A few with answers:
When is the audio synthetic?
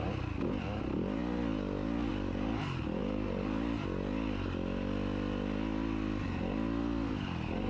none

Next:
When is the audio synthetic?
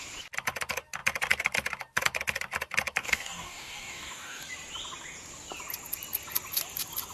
3.0-4.4 (codec, DAC)